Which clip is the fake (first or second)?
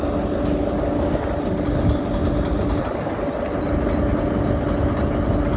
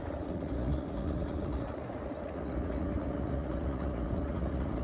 second